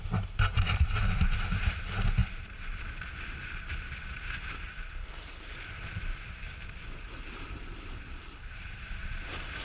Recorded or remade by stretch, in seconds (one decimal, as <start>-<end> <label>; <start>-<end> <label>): 0.0-2.2 recorded; 2.2-6.6 remade; 6.6-9.6 recorded